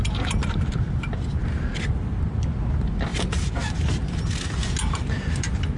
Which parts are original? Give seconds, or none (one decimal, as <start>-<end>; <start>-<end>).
0.0-1.3; 2.1-5.8